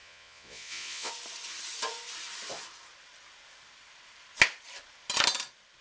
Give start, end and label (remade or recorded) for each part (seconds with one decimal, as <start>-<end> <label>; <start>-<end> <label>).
0.0-1.1 remade; 1.1-5.8 recorded